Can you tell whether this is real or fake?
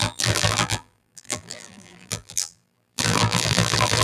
fake